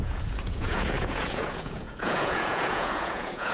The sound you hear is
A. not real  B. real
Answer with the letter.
A